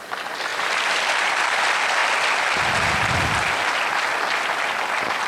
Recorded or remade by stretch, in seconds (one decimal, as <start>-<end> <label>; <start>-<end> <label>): 0.0-0.5 recorded; 0.5-1.0 remade; 1.0-5.3 recorded